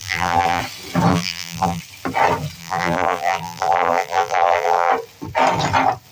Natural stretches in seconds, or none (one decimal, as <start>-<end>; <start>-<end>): 0.6-1.1; 1.8-2.6; 4.9-6.1

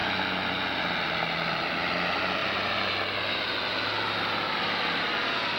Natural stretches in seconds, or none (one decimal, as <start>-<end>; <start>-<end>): 0.0-5.6

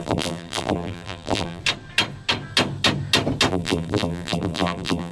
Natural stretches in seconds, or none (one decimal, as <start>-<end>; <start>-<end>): 1.6-3.5

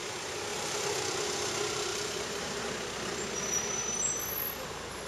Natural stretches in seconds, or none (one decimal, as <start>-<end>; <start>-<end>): 0.0-0.5; 1.0-1.9; 2.6-5.1